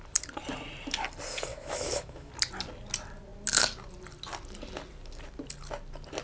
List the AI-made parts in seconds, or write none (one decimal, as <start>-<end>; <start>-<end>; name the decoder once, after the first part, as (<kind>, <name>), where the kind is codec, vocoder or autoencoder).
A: 1.5-2.3 (autoencoder, DAC-VAE)